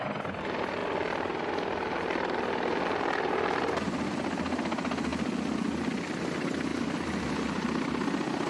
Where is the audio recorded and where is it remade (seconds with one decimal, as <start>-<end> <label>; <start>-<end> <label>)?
0.0-6.7 recorded; 6.7-7.2 remade; 7.2-8.5 recorded